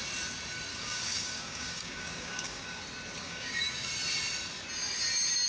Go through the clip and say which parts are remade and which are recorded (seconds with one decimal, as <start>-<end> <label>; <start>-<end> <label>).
0.0-0.7 recorded; 0.7-2.8 remade; 2.8-3.2 recorded; 3.2-3.9 remade; 3.9-5.5 recorded